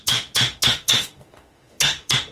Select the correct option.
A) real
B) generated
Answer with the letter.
B